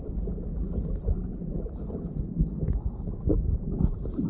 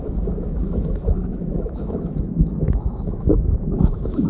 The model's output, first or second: second